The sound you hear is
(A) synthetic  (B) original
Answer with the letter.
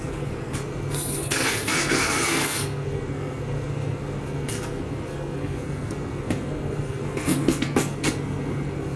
A